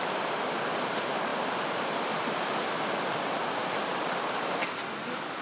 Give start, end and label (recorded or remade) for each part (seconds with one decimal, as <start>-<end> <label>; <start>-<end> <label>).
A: 0.0-5.4 recorded

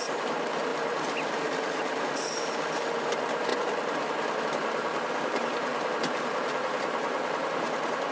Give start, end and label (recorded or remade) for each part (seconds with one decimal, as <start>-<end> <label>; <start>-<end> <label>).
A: 0.0-3.5 remade; 3.5-4.4 recorded; 4.4-8.1 remade

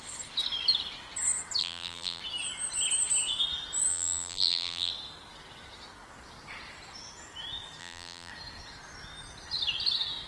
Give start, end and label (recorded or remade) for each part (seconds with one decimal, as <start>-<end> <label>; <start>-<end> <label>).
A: 0.0-1.6 recorded; 1.6-2.2 remade; 2.2-3.9 recorded; 3.9-4.9 remade; 4.9-7.8 recorded; 7.8-8.3 remade; 8.3-10.3 recorded